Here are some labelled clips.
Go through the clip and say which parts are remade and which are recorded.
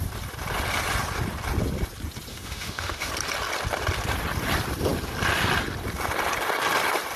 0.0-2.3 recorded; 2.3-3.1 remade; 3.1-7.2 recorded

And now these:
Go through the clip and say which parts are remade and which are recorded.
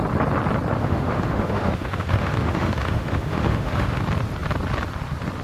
0.0-0.8 recorded; 0.8-4.0 remade; 4.0-5.4 recorded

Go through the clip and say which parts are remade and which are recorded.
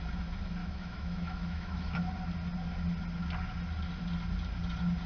0.0-0.6 recorded; 0.6-1.9 remade; 1.9-5.1 recorded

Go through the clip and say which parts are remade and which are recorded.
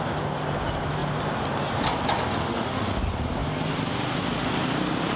0.0-2.4 recorded; 2.4-2.9 remade; 2.9-5.2 recorded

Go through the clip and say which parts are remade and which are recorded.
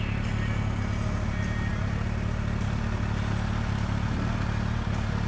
0.0-5.3 recorded